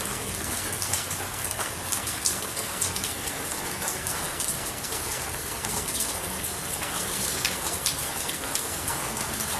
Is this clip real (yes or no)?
no